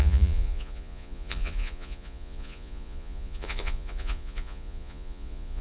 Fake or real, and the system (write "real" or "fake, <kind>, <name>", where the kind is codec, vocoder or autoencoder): fake, vocoder, Vocos